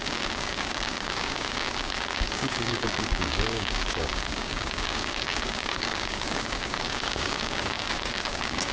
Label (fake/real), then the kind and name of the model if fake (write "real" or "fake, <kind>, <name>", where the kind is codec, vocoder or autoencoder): fake, codec, DAC